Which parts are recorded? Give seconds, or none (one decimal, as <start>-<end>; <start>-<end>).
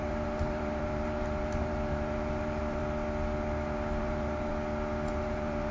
2.8-4.0; 4.5-5.2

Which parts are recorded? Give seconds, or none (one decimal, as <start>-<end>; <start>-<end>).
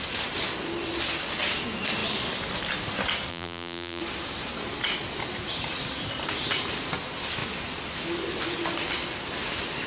0.0-3.3; 4.0-9.9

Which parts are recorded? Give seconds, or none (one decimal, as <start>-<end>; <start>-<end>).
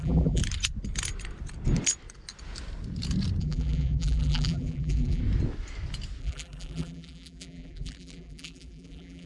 0.4-3.4; 5.2-6.2